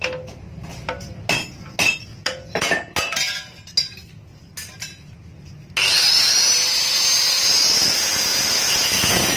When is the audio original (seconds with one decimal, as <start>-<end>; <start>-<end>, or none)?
0.0-2.1; 3.2-8.3